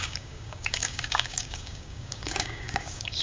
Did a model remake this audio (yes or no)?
yes